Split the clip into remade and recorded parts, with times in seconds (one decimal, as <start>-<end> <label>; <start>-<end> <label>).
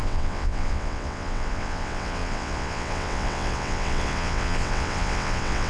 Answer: 0.0-5.7 remade